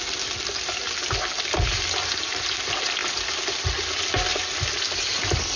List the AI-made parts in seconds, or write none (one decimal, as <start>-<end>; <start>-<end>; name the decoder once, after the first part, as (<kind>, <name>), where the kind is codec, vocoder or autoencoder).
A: none